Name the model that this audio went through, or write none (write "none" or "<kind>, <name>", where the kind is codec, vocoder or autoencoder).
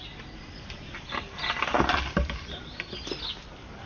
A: none